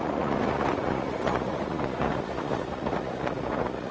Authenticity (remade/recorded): remade